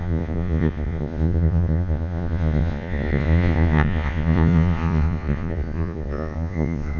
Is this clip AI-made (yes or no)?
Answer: yes